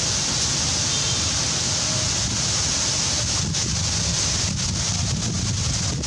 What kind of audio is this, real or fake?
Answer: real